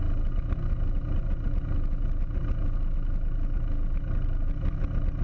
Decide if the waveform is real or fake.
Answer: real